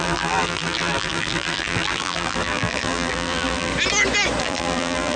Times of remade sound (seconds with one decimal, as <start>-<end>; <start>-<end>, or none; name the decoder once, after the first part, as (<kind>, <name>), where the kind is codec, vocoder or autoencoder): 0.0-3.7 (vocoder, BigVGAN v2); 4.4-5.2